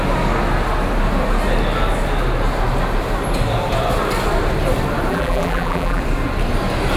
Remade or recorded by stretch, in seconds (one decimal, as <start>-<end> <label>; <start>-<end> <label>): 0.0-5.1 recorded; 5.1-6.0 remade; 6.0-7.0 recorded